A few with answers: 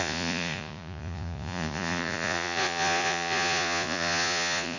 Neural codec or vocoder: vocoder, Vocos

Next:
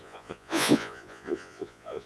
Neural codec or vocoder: vocoder, Vocos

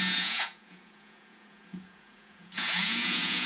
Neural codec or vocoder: vocoder, Vocos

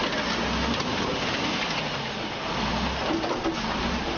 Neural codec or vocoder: none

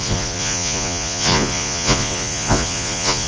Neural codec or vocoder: vocoder, Vocos